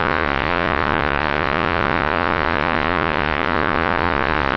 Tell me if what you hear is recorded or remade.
remade